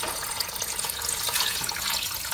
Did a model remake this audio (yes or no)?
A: yes